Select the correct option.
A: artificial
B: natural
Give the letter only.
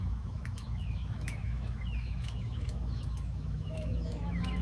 A